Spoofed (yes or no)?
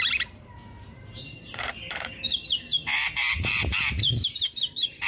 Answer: yes